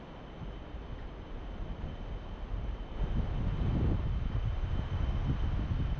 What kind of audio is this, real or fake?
real